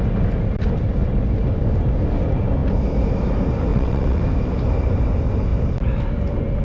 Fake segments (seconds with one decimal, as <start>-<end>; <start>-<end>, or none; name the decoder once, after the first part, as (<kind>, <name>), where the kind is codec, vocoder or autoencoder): 3.7-4.2 (vocoder, WaveNeXt)